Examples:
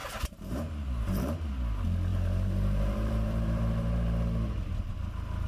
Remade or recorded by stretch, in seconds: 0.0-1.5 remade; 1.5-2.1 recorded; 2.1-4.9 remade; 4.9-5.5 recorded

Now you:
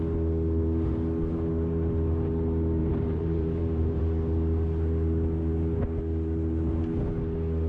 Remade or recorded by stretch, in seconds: 0.0-2.8 recorded; 2.8-4.0 remade; 4.0-7.7 recorded

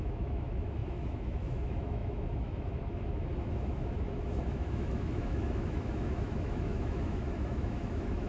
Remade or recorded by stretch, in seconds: 0.0-8.3 remade

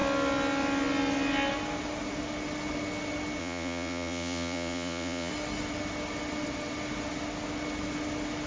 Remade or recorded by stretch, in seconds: 0.0-3.4 recorded; 3.4-5.3 remade; 5.3-8.5 recorded

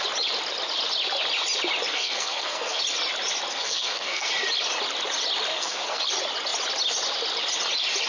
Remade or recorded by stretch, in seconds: 0.0-1.9 recorded; 1.9-2.8 remade; 2.8-3.5 recorded; 3.5-4.3 remade; 4.3-5.5 recorded; 5.5-6.0 remade; 6.0-8.1 recorded

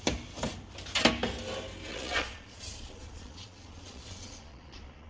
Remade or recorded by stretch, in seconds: 0.0-1.9 recorded; 1.9-5.1 remade

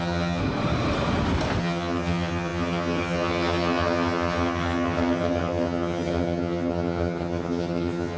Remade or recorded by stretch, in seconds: 0.0-0.4 remade; 0.4-1.6 recorded; 1.6-8.2 remade